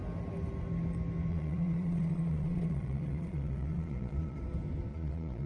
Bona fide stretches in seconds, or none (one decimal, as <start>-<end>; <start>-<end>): 0.0-1.3; 4.4-4.9